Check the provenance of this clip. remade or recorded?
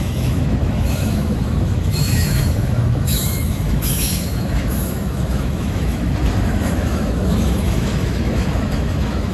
remade